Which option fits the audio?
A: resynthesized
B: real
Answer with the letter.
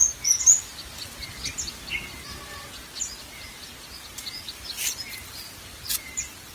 B